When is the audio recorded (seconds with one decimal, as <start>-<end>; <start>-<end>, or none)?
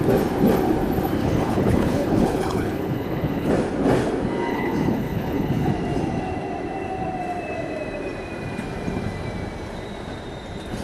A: 0.0-1.2; 3.5-4.5; 5.7-10.8